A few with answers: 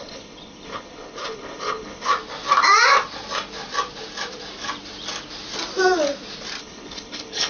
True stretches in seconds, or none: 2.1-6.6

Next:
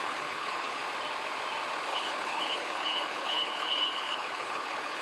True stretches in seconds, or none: 0.8-1.9